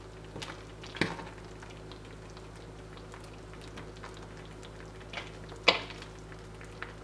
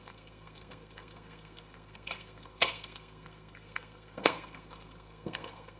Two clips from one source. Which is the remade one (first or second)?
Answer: second